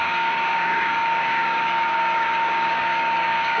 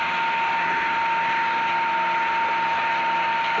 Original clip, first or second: second